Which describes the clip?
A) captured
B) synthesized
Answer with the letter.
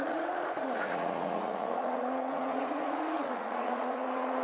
B